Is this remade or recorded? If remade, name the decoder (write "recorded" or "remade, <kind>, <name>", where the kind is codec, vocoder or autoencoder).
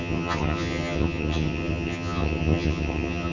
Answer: remade, vocoder, HiFi-GAN